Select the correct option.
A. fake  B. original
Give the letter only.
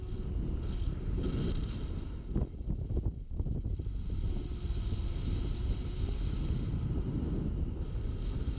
B